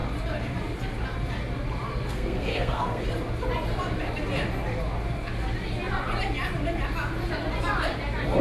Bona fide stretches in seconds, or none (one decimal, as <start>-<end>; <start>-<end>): 0.0-2.1; 3.0-8.4